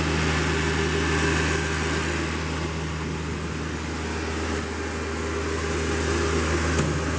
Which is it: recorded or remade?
recorded